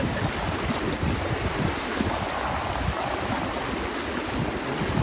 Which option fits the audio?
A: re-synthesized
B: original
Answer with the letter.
B